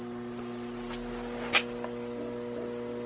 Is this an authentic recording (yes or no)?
yes